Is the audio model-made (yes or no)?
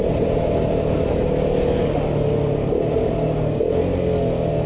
no